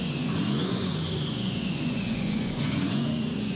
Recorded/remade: remade